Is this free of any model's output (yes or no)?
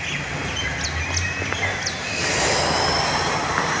yes